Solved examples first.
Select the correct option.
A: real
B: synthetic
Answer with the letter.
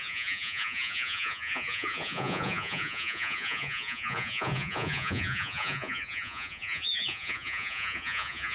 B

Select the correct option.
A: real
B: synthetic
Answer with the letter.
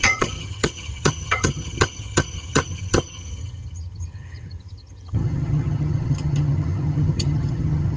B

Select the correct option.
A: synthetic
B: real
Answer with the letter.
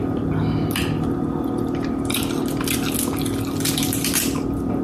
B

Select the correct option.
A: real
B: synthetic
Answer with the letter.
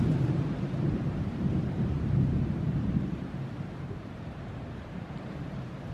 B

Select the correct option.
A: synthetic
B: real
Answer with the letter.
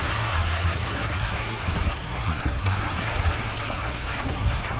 A